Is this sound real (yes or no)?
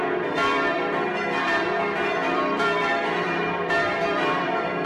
no